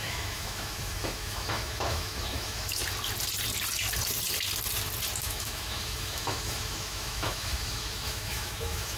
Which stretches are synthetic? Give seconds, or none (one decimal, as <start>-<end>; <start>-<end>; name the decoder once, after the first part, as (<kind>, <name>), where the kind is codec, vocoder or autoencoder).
0.0-2.8 (autoencoder, DAC-VAE); 5.2-9.0